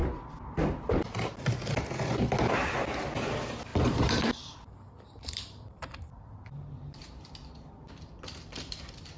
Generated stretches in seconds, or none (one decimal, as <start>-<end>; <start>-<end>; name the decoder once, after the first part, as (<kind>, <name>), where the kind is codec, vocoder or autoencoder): 0.0-1.9 (vocoder, BigVGAN v2); 3.7-7.0